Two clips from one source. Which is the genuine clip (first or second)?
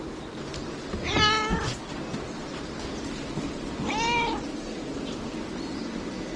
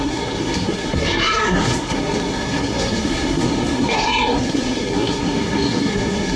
first